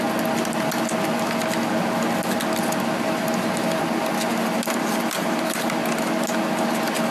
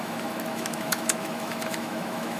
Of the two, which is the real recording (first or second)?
first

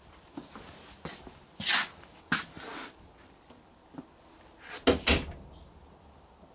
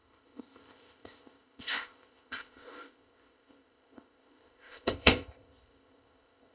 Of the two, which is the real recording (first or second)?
first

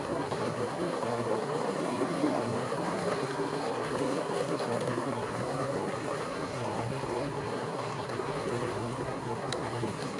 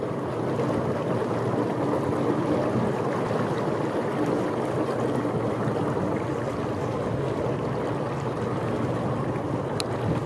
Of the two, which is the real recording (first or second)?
second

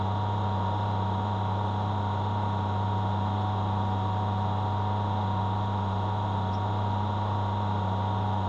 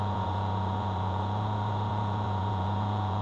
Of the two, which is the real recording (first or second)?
first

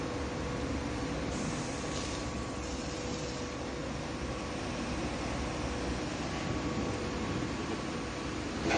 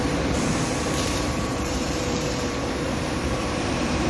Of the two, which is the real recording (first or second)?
first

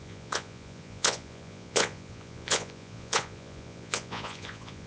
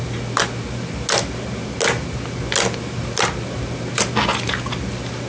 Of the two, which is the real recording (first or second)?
second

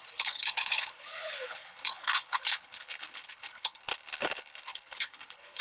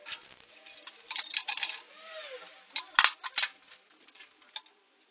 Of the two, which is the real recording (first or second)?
second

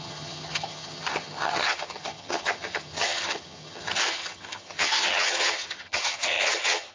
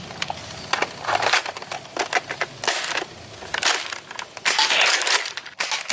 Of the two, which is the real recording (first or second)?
second